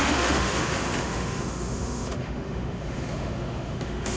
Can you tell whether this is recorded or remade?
remade